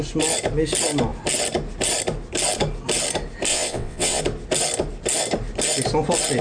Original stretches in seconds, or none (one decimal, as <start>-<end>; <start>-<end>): 0.0-3.5; 4.2-6.4

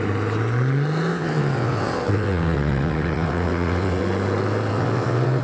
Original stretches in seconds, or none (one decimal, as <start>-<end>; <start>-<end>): 0.0-1.1; 4.0-4.7

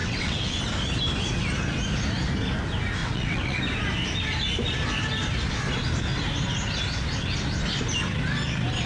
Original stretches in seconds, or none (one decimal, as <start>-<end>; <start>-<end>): 0.6-3.0; 3.6-8.9

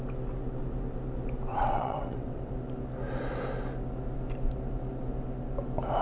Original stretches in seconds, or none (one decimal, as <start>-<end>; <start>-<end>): 0.0-1.5; 2.5-6.0

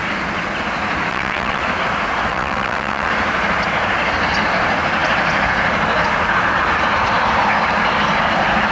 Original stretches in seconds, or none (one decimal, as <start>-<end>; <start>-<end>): 0.0-1.1; 1.6-2.3; 3.1-8.7

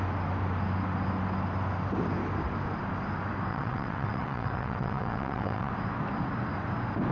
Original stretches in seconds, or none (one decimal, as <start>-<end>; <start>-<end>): 0.0-3.5; 5.7-7.1

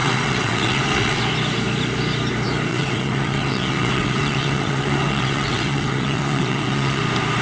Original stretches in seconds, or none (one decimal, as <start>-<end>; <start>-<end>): 1.2-2.7; 7.0-7.4